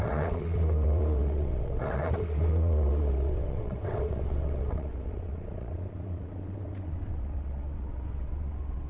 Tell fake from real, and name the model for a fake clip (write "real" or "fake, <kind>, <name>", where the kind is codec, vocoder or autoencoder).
fake, vocoder, WaveNeXt